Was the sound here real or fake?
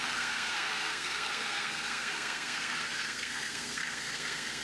fake